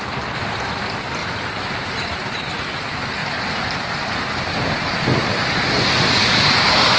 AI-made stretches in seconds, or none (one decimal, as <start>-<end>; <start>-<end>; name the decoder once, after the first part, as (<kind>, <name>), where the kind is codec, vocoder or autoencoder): 1.2-1.9 (vocoder, BigVGAN v2); 3.2-5.4; 6.2-7.0